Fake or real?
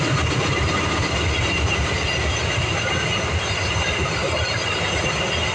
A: real